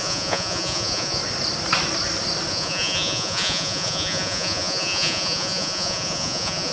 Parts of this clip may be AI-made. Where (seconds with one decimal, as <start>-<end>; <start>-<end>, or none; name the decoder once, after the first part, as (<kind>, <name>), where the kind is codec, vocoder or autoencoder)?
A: 0.0-1.2 (vocoder, Vocos); 2.5-6.7